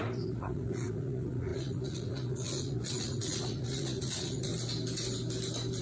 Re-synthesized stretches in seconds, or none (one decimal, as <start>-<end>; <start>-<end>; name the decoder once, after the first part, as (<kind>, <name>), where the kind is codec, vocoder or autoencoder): 0.0-4.5 (vocoder, Vocos)